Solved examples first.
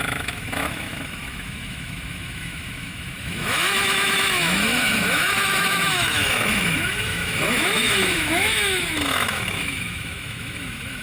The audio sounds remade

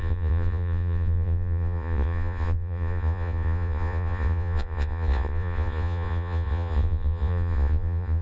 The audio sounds remade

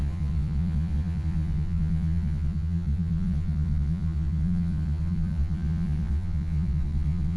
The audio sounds remade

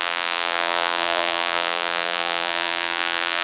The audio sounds remade